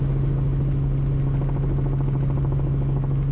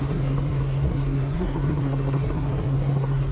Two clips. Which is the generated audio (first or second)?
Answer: second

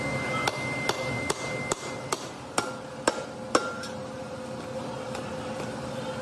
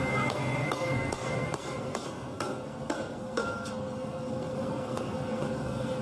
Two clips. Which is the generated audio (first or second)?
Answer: second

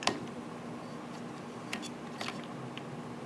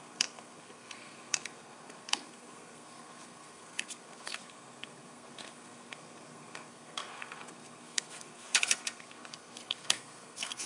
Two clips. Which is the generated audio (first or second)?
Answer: second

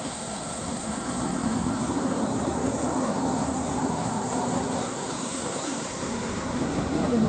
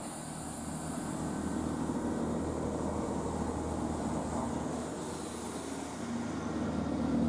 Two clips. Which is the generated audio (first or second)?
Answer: first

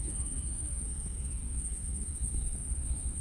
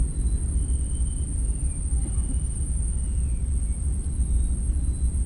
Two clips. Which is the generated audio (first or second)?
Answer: first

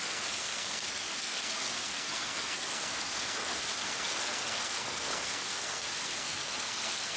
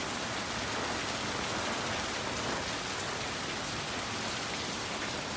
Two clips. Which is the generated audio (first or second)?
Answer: first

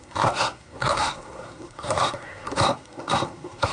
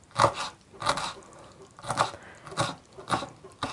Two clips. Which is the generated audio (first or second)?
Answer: first